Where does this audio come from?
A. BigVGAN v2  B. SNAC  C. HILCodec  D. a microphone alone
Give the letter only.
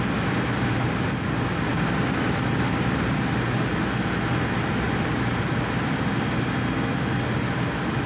D